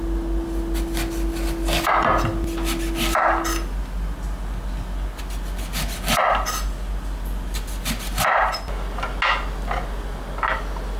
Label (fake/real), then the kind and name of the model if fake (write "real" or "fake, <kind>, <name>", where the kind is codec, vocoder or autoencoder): real